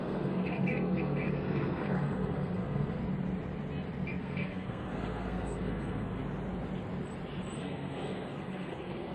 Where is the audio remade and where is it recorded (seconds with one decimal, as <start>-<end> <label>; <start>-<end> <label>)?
0.0-3.0 remade; 3.0-4.2 recorded; 4.2-6.2 remade; 6.2-7.6 recorded; 7.6-9.1 remade